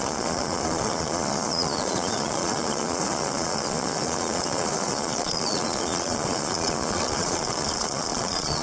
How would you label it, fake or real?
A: fake